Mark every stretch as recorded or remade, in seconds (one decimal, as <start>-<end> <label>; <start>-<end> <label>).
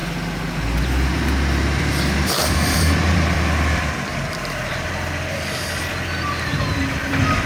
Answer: 0.0-1.8 recorded; 1.8-4.1 remade; 4.1-6.5 recorded; 6.5-7.5 remade